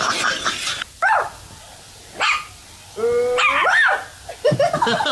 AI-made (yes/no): no